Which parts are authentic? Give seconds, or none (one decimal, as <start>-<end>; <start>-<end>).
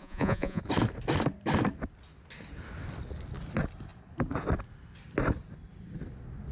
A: 0.6-6.5